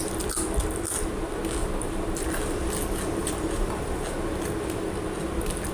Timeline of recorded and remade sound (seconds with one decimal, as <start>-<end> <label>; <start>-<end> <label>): 0.0-3.2 recorded; 3.2-3.7 remade; 3.7-5.7 recorded